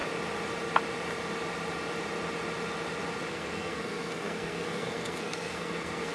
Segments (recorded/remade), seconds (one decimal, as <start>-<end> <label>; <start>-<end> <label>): 0.0-3.3 recorded; 3.3-6.1 remade